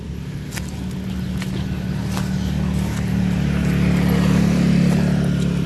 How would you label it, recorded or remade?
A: recorded